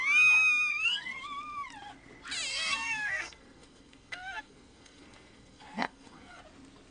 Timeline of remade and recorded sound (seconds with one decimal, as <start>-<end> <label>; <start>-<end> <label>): 0.0-0.7 recorded; 0.7-1.2 remade; 1.2-2.5 recorded; 2.5-6.4 remade; 6.4-6.9 recorded